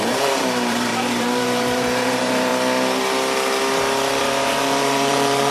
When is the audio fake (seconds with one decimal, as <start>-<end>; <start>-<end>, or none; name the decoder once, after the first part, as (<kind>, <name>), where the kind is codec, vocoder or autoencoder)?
0.0-2.5 (vocoder, BigVGAN v2); 4.2-5.5